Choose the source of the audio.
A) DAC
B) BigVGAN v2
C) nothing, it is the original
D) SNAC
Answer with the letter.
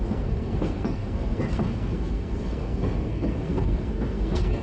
D